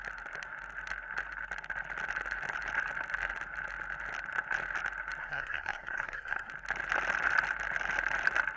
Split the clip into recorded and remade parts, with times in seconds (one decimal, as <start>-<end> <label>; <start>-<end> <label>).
0.0-5.2 recorded; 5.2-6.5 remade; 6.5-8.6 recorded